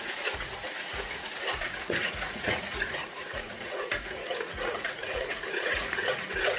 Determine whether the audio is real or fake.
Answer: fake